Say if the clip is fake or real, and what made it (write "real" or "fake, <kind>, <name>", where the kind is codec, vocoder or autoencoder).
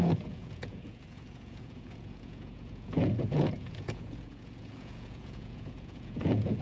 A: fake, vocoder, Vocos